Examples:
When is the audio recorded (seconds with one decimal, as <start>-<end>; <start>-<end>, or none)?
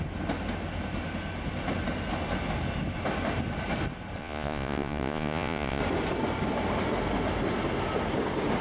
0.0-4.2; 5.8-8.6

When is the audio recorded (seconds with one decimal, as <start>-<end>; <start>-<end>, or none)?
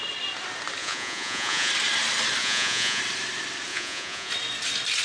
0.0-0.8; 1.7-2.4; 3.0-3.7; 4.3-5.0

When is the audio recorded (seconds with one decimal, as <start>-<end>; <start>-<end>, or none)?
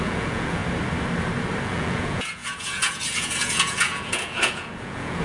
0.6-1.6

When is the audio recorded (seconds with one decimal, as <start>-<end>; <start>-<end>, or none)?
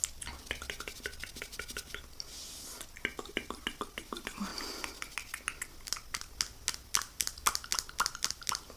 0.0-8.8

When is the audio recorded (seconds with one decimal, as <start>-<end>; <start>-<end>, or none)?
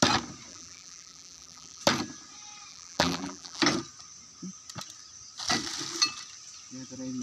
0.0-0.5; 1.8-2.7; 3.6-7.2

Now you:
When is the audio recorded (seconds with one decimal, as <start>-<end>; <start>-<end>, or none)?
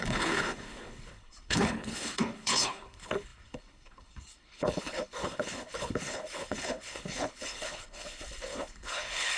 none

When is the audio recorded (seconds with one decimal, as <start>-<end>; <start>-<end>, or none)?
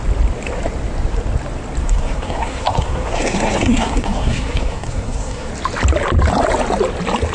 0.0-1.8; 5.5-7.3